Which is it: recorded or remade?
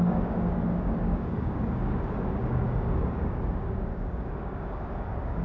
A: remade